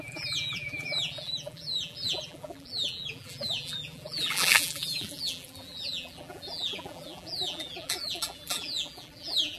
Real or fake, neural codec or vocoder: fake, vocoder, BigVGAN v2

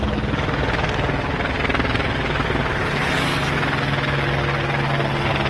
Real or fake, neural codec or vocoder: real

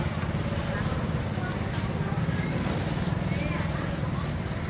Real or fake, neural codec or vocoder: real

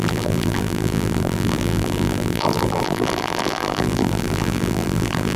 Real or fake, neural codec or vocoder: fake, vocoder, BigVGAN v2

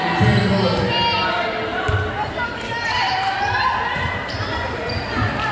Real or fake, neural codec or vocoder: real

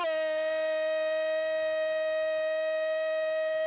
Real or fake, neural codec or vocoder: real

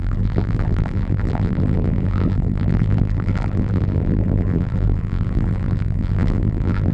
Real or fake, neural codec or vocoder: fake, vocoder, BigVGAN v2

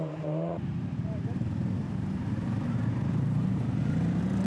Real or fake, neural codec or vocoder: fake, vocoder, BigVGAN v2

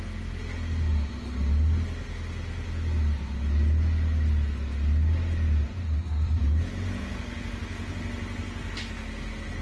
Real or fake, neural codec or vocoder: real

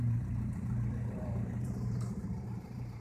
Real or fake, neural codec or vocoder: fake, vocoder, BigVGAN v2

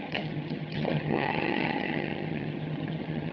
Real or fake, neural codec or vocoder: fake, vocoder, HiFi-GAN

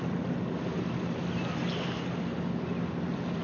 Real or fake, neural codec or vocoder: real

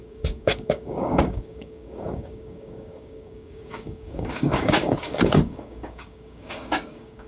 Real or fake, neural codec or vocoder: fake, codec, DAC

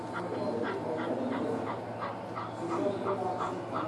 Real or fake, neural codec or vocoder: real